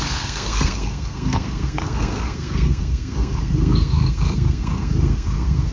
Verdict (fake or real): fake